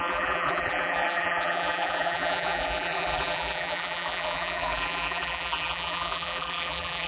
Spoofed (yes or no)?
yes